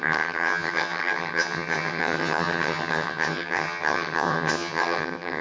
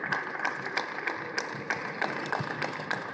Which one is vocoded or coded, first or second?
first